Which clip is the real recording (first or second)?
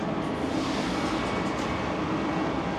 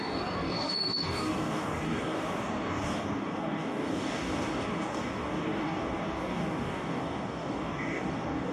first